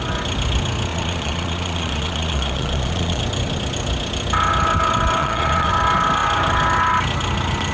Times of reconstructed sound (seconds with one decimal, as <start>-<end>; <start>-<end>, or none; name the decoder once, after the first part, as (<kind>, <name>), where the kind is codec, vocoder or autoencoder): 0.9-3.2 (vocoder, Vocos); 5.2-5.7